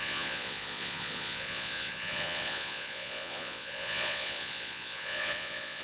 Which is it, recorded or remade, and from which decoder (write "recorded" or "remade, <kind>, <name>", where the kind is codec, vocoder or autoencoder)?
remade, vocoder, Vocos